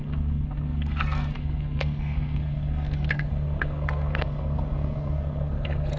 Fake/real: fake